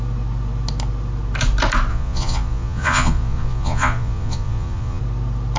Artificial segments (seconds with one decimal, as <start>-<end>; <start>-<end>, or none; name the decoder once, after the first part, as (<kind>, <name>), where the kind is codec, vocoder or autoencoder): 1.9-5.0 (vocoder, Vocos)